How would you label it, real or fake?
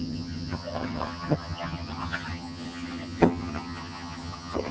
fake